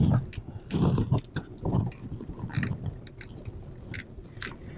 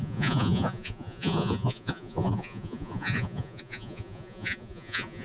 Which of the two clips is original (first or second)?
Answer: first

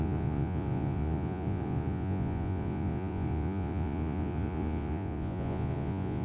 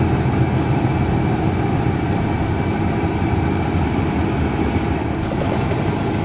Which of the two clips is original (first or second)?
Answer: second